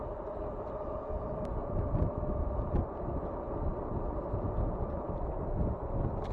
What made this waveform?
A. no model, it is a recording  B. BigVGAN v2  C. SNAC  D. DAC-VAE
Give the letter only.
A